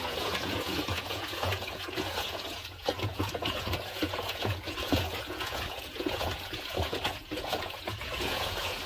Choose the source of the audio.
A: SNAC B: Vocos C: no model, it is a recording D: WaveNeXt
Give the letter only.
B